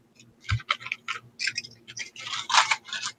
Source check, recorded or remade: recorded